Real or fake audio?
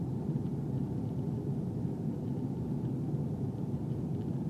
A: fake